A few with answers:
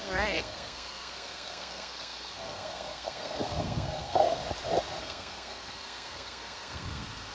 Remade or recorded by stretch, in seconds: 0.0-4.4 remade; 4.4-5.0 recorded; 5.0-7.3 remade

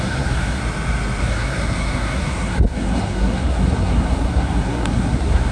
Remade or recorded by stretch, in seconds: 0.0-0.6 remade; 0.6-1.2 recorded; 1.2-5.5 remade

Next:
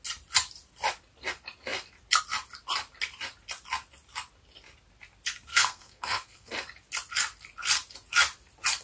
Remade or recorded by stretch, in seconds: 0.0-5.5 recorded; 5.5-6.5 remade; 6.5-8.8 recorded

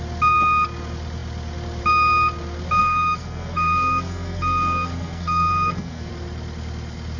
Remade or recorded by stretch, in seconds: 0.0-2.8 recorded; 2.8-6.1 remade; 6.1-7.2 recorded

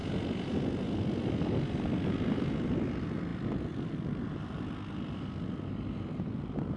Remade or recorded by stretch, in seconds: 0.0-6.8 recorded

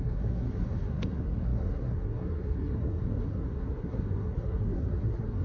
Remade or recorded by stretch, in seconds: 0.0-5.4 remade

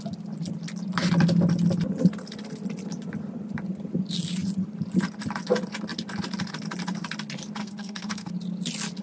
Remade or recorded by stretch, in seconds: 0.0-7.6 recorded; 7.6-8.3 remade; 8.3-9.0 recorded